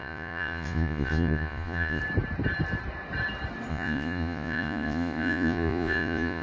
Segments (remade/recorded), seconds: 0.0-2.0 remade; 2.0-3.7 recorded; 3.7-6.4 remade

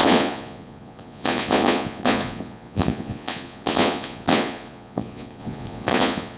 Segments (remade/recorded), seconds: 0.0-6.4 remade